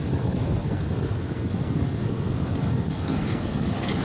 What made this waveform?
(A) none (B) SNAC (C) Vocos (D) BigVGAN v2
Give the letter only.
B